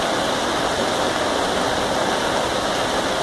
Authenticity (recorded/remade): recorded